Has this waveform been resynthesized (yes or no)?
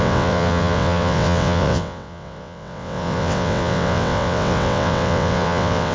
yes